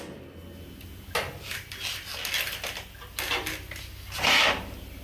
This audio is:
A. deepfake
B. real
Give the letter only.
B